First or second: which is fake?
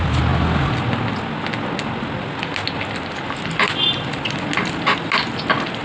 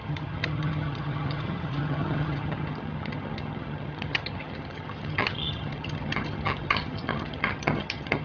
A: second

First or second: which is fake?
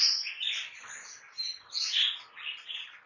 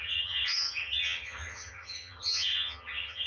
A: second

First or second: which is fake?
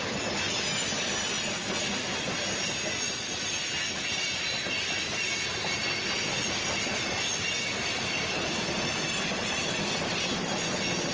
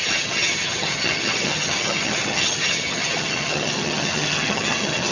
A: second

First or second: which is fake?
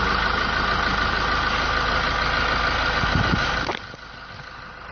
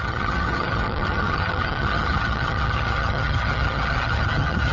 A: second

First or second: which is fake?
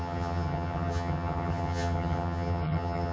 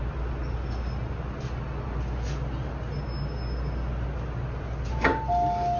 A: first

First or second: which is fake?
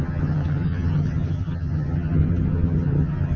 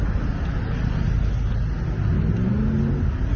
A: first